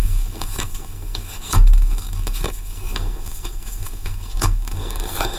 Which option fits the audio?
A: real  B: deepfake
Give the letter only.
B